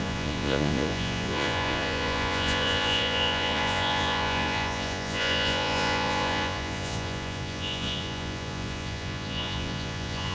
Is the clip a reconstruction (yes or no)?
yes